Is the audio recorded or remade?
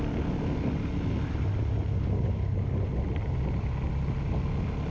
recorded